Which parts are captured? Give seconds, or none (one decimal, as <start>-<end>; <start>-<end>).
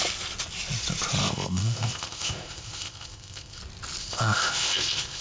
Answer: 0.0-1.2; 3.6-4.0